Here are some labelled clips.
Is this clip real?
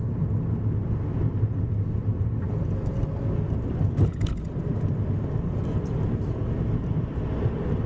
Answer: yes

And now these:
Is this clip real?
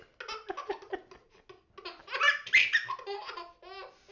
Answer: yes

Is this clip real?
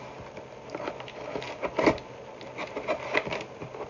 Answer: yes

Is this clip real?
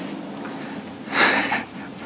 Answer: yes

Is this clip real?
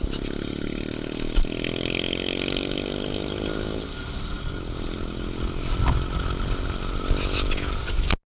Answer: yes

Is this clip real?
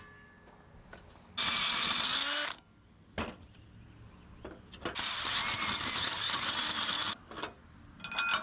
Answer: yes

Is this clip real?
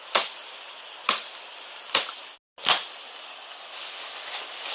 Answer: yes